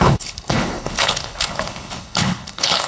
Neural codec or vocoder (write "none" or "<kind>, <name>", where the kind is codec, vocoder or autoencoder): codec, HILCodec